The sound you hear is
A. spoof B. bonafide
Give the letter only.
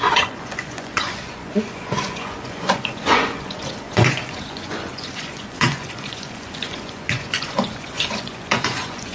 A